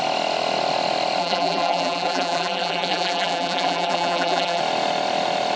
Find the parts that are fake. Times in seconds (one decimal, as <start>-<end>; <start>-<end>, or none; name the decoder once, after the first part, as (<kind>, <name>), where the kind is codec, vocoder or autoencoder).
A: 1.2-4.6 (vocoder, BigVGAN v2)